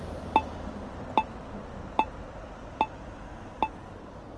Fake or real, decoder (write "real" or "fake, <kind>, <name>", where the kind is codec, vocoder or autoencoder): real